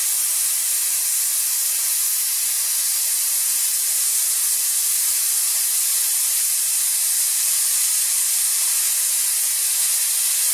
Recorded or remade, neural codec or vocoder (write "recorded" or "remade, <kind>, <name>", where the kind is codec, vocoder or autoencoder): recorded